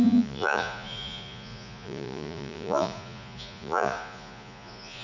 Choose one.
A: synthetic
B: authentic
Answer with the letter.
A